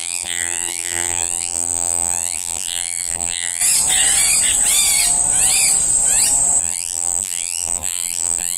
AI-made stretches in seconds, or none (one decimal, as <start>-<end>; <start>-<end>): 0.0-3.6; 6.6-8.6